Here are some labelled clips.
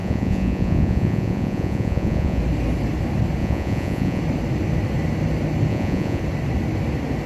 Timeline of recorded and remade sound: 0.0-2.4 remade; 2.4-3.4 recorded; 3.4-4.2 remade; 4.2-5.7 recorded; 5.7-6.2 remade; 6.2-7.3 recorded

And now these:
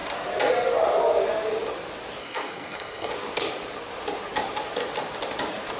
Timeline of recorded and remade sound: 0.0-2.2 recorded; 2.2-3.1 remade; 3.1-5.8 recorded

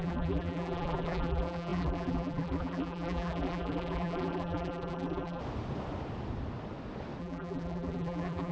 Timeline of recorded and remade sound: 0.0-5.4 remade; 5.4-7.2 recorded; 7.2-8.5 remade

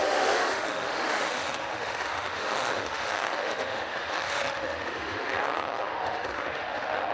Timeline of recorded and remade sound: 0.0-7.1 remade